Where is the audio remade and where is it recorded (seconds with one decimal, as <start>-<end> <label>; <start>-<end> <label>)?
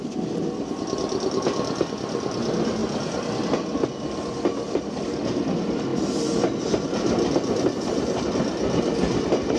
0.0-9.6 recorded